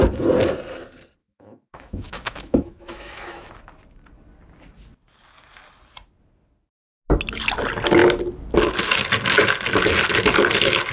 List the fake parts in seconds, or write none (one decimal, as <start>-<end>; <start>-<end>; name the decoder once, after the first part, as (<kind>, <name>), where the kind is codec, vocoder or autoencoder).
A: 1.2-3.5 (autoencoder, DAC-VAE)